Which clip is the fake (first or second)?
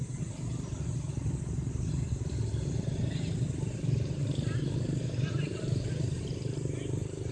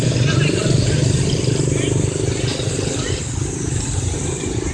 first